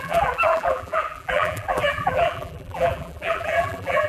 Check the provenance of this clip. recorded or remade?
remade